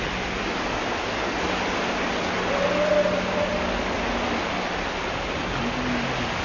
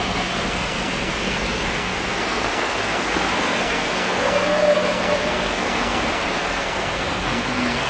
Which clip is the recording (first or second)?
first